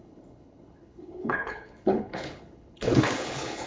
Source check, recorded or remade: remade